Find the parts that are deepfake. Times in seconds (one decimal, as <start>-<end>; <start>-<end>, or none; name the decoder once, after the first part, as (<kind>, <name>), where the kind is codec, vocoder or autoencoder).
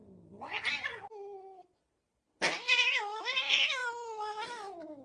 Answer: 3.0-5.0 (autoencoder, DAC-VAE)